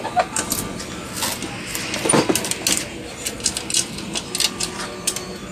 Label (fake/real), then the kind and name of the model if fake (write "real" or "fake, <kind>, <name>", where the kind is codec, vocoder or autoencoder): real